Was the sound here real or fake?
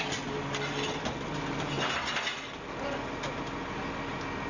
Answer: real